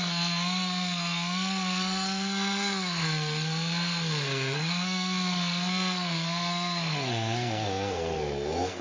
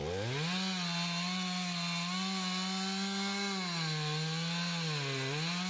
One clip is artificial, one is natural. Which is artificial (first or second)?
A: first